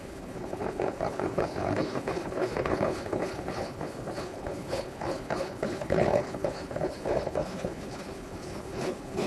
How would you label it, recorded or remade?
remade